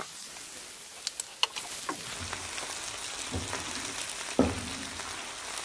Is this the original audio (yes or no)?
yes